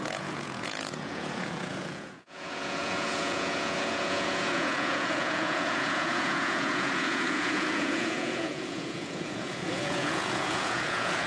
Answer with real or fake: fake